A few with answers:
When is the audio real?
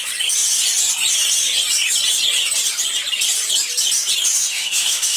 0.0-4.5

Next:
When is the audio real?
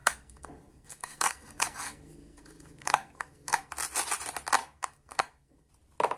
3.7-4.6; 5.7-6.2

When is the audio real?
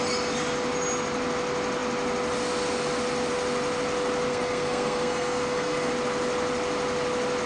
0.0-4.3; 5.9-7.5